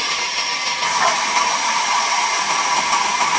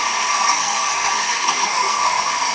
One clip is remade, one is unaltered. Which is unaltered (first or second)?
first